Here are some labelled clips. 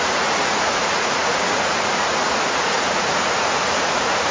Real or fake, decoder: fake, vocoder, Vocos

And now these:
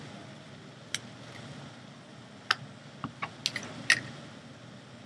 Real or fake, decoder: real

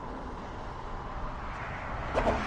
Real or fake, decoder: real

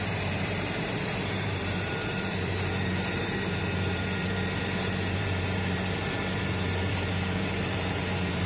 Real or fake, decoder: fake, vocoder, BigVGAN v2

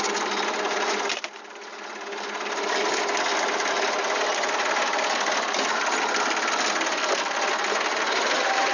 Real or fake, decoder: real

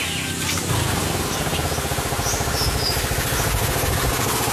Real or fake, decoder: real